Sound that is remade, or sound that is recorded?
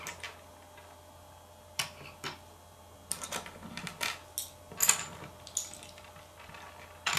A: recorded